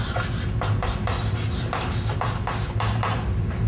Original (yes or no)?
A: no